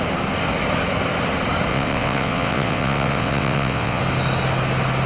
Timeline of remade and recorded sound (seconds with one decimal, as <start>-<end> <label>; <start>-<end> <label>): 0.0-1.7 recorded; 1.7-4.0 remade; 4.0-5.1 recorded